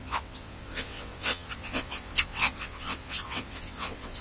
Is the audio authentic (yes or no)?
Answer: no